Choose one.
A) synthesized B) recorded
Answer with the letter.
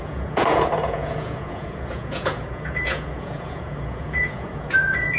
A